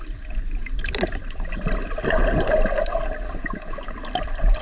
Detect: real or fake real